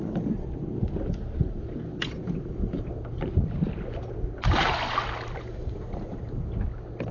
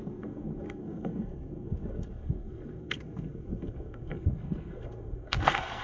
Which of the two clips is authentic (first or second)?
first